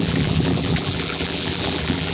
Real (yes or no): no